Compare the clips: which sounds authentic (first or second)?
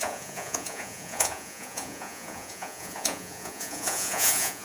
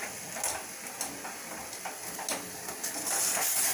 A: second